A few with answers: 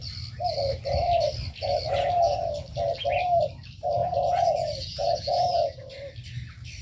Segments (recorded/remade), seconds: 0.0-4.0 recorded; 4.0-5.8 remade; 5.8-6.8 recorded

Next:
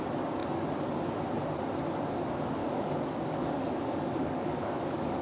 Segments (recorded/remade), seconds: 0.0-2.6 recorded; 2.6-5.2 remade

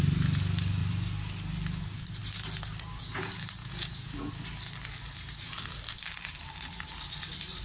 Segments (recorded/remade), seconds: 0.0-3.6 recorded; 3.6-4.3 remade; 4.3-7.6 recorded

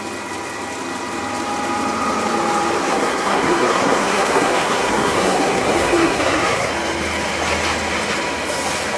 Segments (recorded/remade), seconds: 0.0-2.8 recorded; 2.8-6.7 remade; 6.7-9.0 recorded

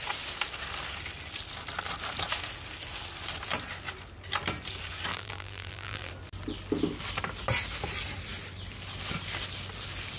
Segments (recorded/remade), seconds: 0.0-5.1 recorded; 5.1-6.1 remade; 6.1-10.2 recorded

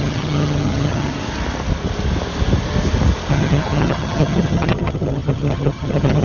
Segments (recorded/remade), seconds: 0.0-1.1 remade; 1.1-3.3 recorded; 3.3-6.2 remade

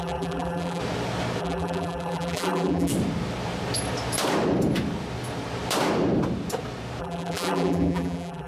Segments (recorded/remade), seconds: 0.0-0.8 remade; 0.8-1.4 recorded; 1.4-2.9 remade; 2.9-7.0 recorded; 7.0-8.5 remade